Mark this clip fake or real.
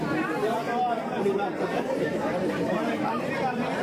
fake